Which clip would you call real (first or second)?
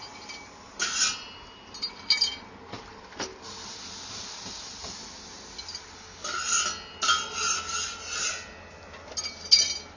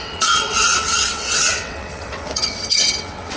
first